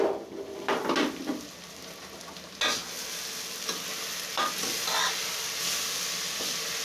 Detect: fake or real real